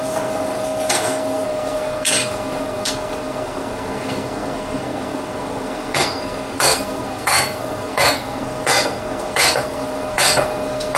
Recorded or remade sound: remade